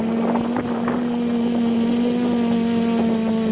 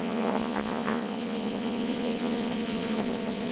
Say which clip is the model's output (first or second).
second